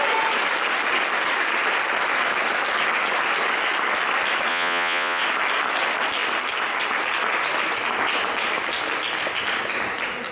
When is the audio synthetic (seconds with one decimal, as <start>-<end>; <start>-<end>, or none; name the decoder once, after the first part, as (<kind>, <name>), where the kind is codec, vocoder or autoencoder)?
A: 4.5-5.2 (vocoder, Vocos)